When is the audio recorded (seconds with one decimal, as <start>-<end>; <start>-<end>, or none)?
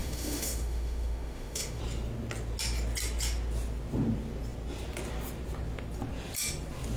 1.8-7.0